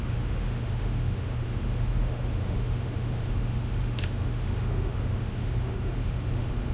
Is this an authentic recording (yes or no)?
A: no